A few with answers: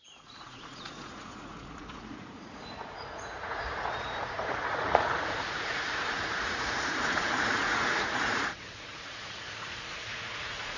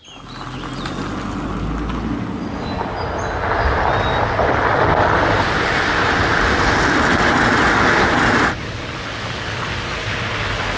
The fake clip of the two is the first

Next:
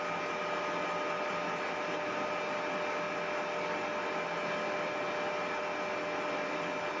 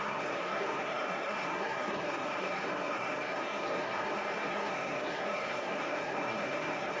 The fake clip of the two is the second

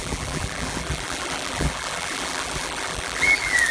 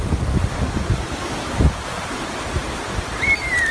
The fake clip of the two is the first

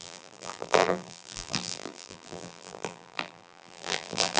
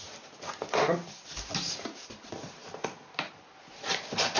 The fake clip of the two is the first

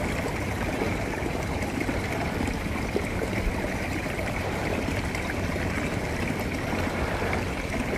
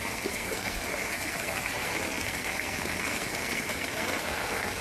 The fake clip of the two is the second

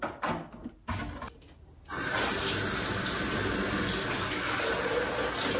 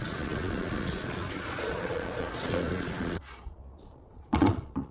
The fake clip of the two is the second